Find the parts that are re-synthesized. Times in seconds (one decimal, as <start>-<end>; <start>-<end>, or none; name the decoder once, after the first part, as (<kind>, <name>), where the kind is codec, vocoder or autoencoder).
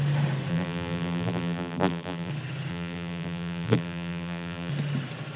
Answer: 0.5-2.3 (vocoder, BigVGAN v2); 2.7-4.7